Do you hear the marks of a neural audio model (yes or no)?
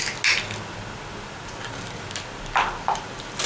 no